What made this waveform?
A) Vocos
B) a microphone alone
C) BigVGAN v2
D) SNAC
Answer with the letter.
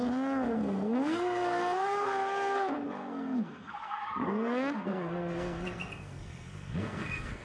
D